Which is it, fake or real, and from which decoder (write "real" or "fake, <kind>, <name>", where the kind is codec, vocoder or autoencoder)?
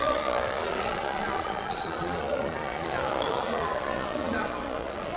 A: fake, vocoder, Vocos